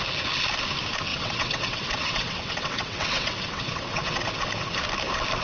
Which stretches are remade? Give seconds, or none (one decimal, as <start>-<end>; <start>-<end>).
1.1-4.3